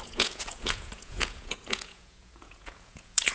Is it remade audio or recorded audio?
remade